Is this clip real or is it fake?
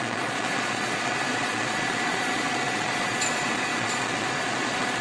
fake